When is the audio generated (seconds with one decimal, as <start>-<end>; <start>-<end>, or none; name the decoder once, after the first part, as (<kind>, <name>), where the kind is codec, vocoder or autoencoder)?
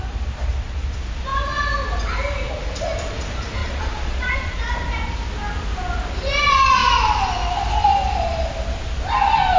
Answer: 3.6-4.5 (vocoder, Vocos)